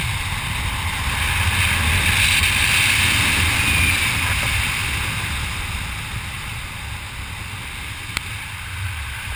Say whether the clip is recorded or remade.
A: recorded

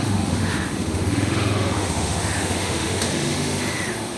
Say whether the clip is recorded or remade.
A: remade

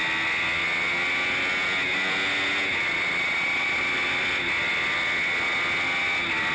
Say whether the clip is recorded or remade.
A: recorded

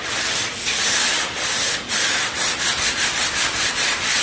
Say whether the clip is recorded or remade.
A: recorded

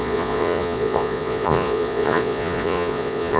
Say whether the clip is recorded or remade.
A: remade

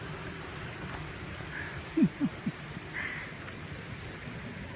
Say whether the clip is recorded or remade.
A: recorded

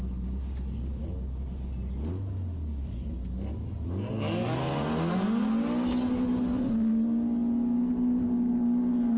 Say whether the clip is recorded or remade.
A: recorded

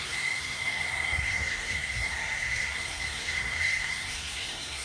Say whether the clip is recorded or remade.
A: remade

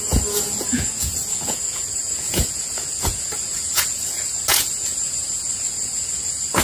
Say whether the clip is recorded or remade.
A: remade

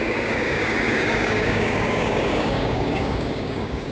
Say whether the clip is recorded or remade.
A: remade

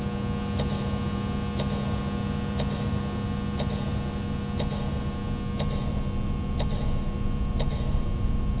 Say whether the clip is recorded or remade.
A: recorded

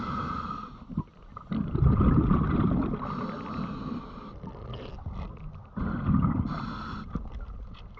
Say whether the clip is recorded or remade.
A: recorded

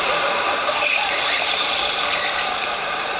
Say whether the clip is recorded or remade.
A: remade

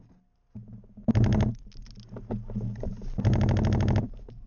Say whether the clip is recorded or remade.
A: recorded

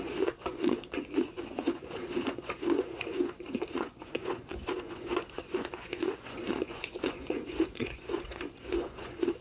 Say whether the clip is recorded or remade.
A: remade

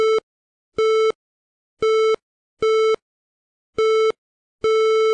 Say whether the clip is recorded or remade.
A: recorded